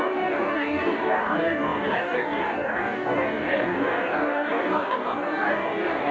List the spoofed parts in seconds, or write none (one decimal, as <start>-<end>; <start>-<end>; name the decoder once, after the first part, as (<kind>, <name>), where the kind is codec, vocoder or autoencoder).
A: 0.0-6.1 (codec, DAC)

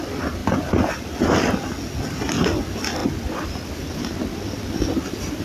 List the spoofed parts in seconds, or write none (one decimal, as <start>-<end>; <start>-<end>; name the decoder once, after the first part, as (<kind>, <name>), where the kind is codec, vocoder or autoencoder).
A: none

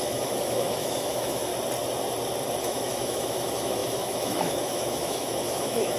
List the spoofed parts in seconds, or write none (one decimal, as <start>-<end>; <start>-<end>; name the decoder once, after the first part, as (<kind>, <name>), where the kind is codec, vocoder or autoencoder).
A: 0.0-1.5 (autoencoder, DAC-VAE); 2.6-6.0

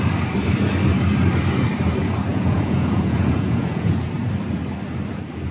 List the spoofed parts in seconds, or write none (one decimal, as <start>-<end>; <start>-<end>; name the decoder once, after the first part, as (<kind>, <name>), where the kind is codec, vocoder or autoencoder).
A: 2.3-4.1 (vocoder, Vocos)